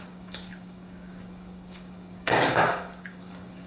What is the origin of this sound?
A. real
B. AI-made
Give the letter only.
B